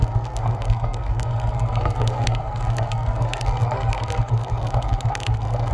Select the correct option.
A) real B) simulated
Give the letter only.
B